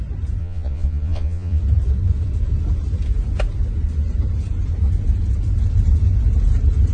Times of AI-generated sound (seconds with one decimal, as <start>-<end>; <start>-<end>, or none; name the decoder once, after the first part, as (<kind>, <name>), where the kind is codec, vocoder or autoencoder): 0.4-1.6 (vocoder, Vocos)